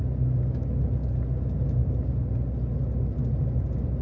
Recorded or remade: recorded